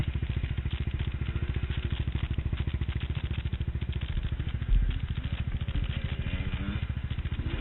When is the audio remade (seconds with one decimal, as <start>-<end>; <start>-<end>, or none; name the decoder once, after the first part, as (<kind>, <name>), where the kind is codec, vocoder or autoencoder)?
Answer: none